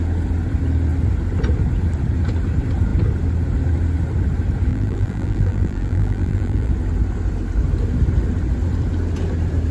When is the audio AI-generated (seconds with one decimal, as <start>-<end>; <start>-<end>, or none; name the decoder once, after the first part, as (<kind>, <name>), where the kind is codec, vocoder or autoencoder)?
4.7-6.7 (vocoder, BigVGAN v2)